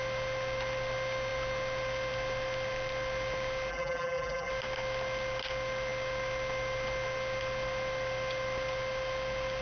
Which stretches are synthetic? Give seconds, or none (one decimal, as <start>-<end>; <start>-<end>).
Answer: 3.7-4.5